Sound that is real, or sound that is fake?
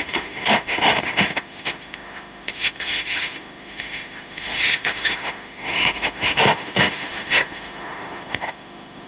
fake